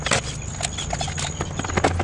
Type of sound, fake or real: real